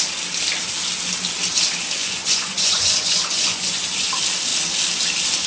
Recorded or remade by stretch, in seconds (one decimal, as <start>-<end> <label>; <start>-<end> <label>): 0.0-2.0 recorded; 2.0-3.8 remade; 3.8-5.5 recorded